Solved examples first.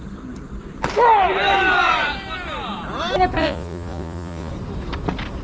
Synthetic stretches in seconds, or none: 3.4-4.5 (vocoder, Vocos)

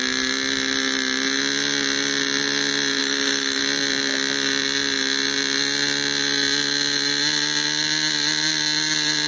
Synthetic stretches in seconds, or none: 3.0-3.6 (autoencoder, DAC-VAE)

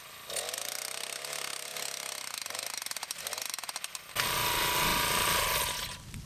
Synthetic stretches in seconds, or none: none

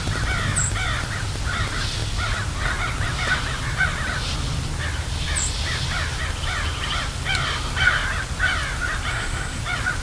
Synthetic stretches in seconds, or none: 9.1-9.6 (codec, SNAC)

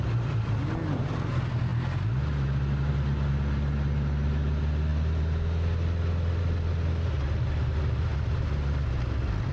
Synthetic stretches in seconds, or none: none

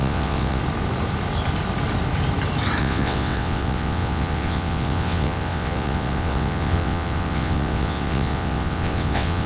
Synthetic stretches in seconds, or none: 0.0-0.6 (vocoder, WaveNeXt); 2.8-9.5

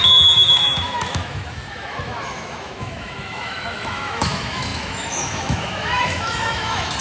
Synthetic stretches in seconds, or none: 0.0-7.0 (autoencoder, DAC-VAE)

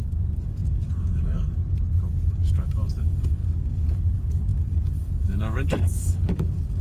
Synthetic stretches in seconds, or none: 0.0-1.6 (codec, DAC); 2.3-6.8